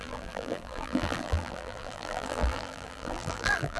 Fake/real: fake